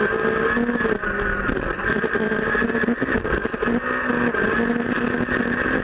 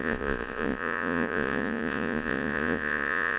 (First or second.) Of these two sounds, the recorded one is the first